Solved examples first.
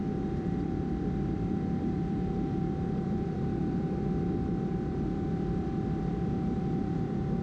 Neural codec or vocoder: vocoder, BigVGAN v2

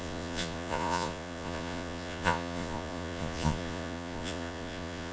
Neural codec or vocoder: vocoder, Vocos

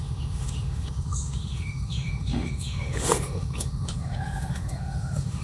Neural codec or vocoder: autoencoder, DAC-VAE